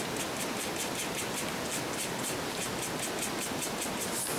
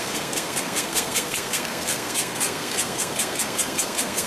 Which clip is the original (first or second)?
first